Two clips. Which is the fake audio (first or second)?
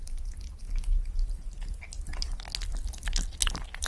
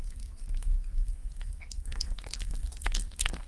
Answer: second